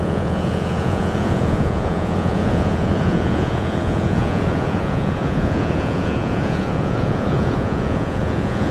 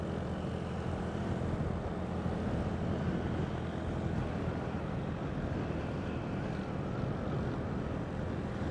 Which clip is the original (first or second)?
second